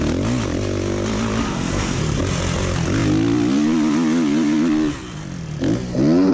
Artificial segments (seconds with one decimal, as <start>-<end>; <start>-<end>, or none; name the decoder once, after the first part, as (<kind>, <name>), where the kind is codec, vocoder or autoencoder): 1.4-2.0 (codec, SNAC)